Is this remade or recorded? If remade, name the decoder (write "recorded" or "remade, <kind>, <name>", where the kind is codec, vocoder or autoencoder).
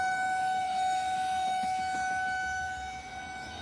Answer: remade, autoencoder, DAC-VAE